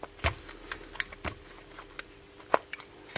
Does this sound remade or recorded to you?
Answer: recorded